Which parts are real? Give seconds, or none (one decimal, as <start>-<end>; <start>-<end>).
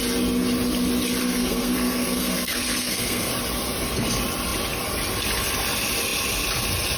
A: 0.0-1.2; 3.3-7.0